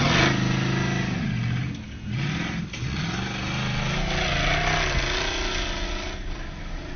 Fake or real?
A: real